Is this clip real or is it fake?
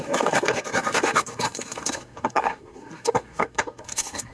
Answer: fake